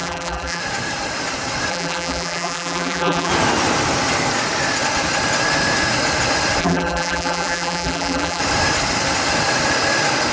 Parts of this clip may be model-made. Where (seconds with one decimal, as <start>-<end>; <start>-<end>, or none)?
0.0-0.6; 1.7-3.3; 6.6-8.4